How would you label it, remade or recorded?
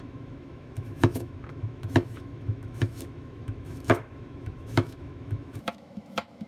remade